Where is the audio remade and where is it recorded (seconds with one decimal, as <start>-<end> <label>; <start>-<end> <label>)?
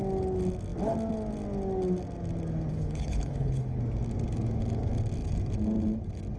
0.0-2.7 recorded; 2.7-3.8 remade; 3.8-6.4 recorded